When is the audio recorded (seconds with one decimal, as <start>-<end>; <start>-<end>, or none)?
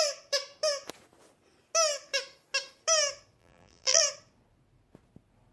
0.0-3.4; 4.0-5.5